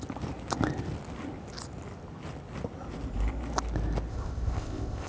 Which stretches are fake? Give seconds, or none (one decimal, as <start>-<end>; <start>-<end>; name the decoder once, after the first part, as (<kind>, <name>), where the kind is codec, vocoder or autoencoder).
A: 4.1-5.1 (codec, ZipCodec)